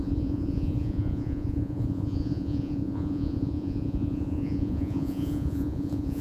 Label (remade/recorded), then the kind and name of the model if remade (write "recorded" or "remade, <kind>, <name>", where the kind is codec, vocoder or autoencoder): remade, vocoder, Vocos